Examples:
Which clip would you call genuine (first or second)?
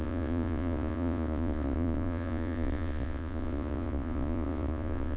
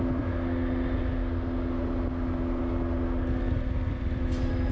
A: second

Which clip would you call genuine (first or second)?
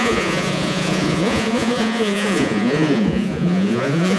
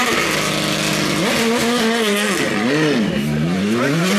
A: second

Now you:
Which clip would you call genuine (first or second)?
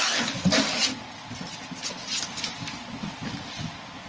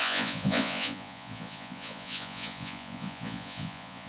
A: first